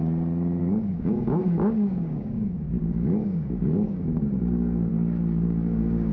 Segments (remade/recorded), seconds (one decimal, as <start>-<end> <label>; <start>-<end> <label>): 0.0-0.6 recorded; 0.6-6.1 remade